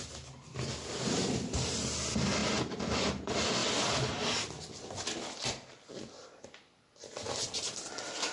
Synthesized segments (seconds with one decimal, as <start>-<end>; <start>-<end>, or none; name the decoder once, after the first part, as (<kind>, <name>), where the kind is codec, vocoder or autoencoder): none